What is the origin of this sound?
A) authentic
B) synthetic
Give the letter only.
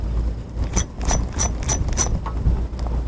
A